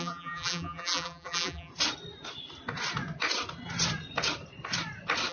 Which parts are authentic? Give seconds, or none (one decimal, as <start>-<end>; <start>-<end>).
1.7-5.3

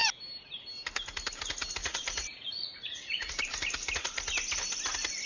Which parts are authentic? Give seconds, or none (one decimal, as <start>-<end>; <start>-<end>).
0.0-1.8; 3.3-5.3

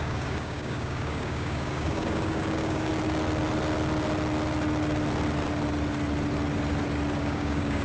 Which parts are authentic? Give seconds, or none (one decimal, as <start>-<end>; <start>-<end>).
2.9-7.2

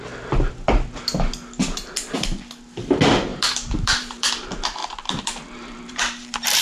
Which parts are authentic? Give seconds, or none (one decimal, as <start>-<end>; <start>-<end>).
0.0-3.3; 4.3-4.8

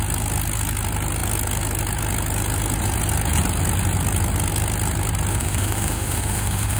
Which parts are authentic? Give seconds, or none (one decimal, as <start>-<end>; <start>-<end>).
0.0-5.3

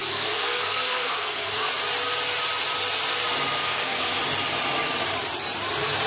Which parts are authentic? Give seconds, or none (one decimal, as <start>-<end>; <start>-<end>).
1.7-3.6; 4.2-6.1

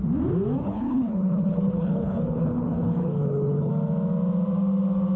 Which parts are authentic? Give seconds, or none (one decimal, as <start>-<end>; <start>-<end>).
0.0-0.6; 3.7-5.2